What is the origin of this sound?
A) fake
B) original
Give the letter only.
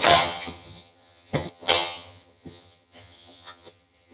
A